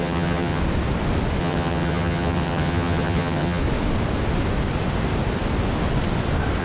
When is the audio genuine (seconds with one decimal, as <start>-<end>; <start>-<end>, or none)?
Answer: 0.6-1.4; 3.6-6.6